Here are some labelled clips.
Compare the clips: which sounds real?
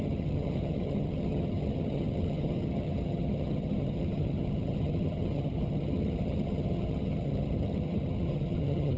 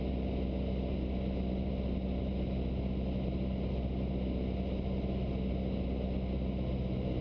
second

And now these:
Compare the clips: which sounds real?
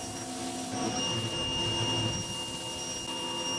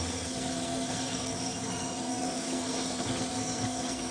first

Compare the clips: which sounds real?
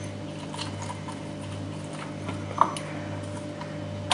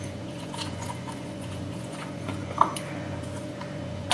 first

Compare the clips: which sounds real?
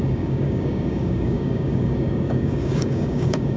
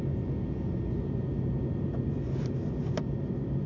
second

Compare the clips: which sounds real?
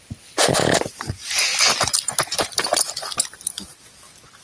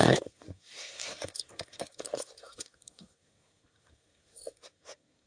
first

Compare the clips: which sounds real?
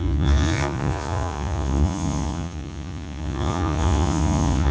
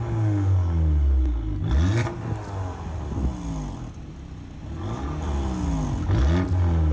second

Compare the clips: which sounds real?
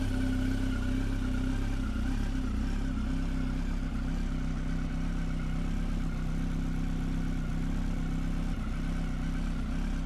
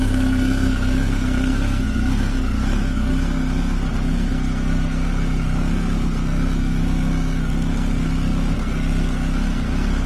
first